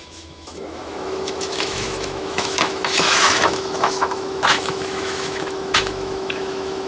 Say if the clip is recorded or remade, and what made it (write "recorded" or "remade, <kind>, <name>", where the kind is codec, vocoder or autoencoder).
remade, autoencoder, DAC-VAE